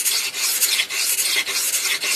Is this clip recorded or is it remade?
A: recorded